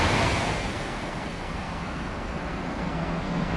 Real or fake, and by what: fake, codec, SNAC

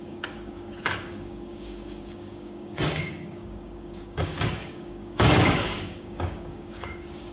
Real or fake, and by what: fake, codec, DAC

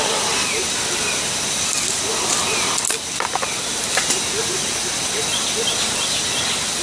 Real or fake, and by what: real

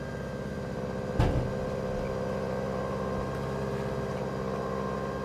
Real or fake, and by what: real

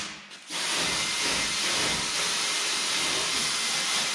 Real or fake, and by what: real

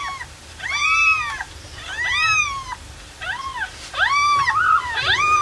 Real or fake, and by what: real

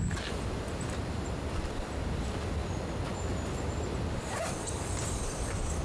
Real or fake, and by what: real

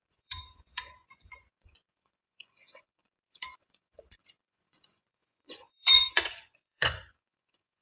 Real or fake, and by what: fake, vocoder, Vocos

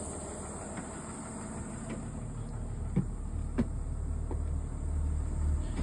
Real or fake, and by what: real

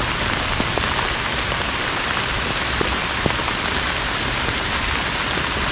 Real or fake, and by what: real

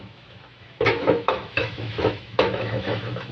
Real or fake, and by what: fake, autoencoder, DAC-VAE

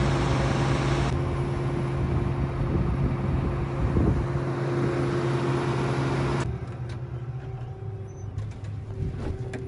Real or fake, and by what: real